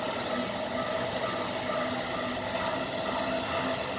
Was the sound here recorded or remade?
recorded